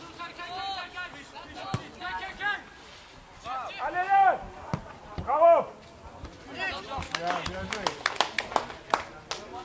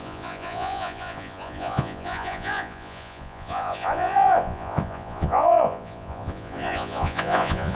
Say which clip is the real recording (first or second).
first